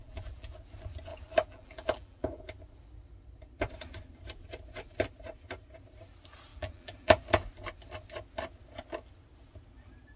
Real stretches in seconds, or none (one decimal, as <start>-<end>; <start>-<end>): 0.5-1.1; 2.4-6.5; 7.2-10.2